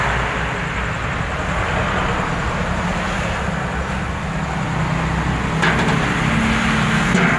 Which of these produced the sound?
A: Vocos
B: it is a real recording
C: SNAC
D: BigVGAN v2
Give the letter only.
B